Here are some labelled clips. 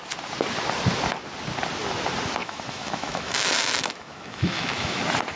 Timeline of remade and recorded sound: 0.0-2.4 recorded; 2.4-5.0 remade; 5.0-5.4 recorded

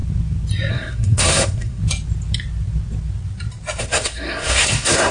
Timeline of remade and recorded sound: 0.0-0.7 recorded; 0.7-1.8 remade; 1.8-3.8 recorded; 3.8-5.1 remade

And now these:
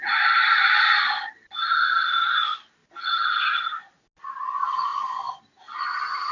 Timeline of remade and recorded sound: 0.0-6.3 recorded

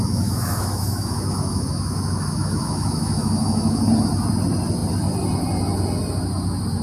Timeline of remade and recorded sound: 0.0-3.8 remade; 3.8-6.8 recorded